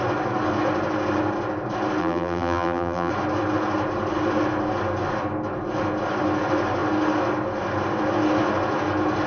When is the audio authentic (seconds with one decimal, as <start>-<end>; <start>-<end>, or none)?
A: 0.0-2.0; 3.1-9.3